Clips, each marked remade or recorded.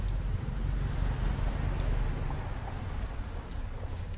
recorded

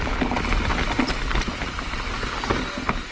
recorded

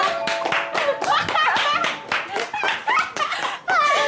recorded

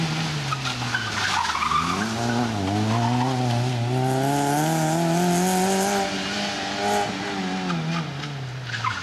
recorded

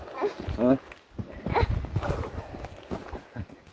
recorded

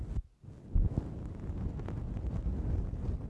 recorded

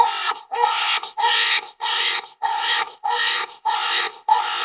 remade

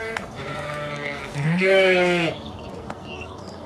remade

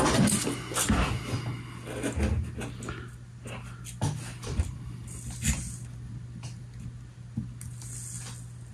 recorded